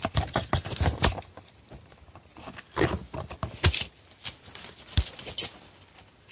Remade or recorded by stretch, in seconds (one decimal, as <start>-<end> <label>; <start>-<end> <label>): 0.0-6.3 recorded